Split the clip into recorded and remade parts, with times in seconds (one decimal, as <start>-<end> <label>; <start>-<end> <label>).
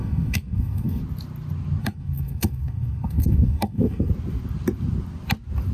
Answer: 0.0-1.0 remade; 1.0-1.8 recorded; 1.8-4.1 remade; 4.1-5.7 recorded